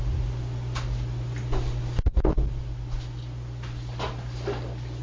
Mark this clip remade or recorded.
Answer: recorded